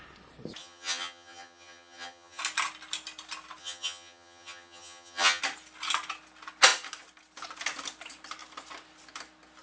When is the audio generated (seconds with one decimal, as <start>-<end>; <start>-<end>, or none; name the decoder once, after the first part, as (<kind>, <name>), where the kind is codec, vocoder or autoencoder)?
0.6-2.4 (vocoder, HiFi-GAN); 3.6-5.4